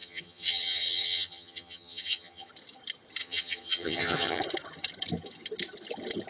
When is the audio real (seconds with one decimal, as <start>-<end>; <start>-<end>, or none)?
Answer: 2.5-3.2; 4.4-6.3